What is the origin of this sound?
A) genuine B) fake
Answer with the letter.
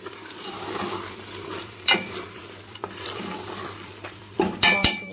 B